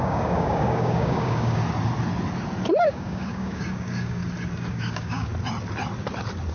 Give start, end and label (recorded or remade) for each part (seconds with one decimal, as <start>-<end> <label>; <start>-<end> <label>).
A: 0.0-1.6 remade; 1.6-2.8 recorded; 2.8-4.2 remade; 4.2-4.7 recorded; 4.7-5.3 remade; 5.3-6.5 recorded